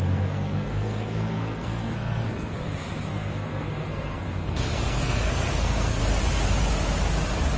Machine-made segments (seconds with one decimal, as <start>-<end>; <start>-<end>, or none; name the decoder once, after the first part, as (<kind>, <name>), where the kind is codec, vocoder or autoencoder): 0.0-6.0 (codec, SNAC)